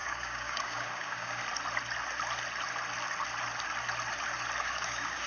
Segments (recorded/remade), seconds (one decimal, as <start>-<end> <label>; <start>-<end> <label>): 0.0-1.4 remade; 1.4-4.6 recorded; 4.6-5.3 remade